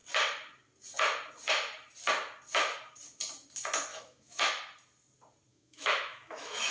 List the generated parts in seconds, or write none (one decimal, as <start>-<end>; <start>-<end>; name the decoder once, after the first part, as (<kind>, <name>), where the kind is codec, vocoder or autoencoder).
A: 3.9-4.5 (autoencoder, DAC-VAE); 5.5-6.7